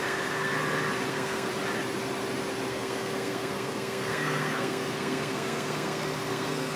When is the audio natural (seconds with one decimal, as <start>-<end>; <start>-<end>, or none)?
0.5-1.1; 1.5-2.7